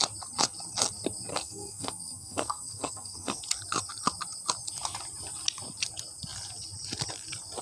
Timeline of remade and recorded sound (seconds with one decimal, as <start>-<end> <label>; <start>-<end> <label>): 0.0-1.3 recorded; 1.3-3.4 remade; 3.4-7.6 recorded